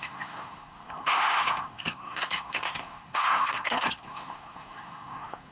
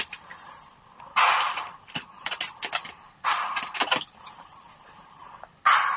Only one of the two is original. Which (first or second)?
second